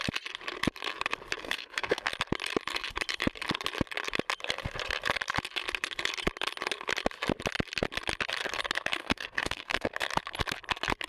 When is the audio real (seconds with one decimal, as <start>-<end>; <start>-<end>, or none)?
0.0-1.4; 2.1-9.0; 9.9-11.1